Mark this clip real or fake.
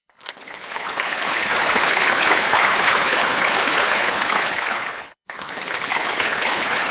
fake